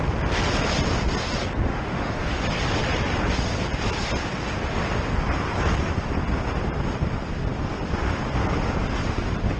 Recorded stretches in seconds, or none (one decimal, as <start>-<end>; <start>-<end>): 0.0-1.7; 2.4-9.6